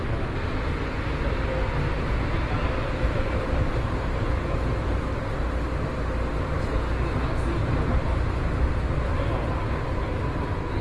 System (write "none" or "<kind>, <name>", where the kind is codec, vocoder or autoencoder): none